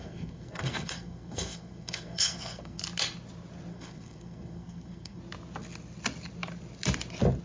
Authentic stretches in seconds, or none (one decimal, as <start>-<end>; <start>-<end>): 2.8-3.7; 5.2-7.4

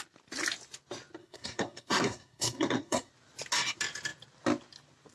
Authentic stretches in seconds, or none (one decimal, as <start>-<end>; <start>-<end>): 0.0-1.2; 3.1-5.1